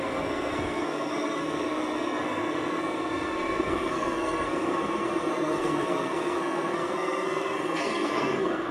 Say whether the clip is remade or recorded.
remade